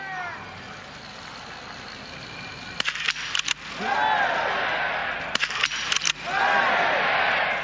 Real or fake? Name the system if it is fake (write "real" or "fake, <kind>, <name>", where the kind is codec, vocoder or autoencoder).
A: real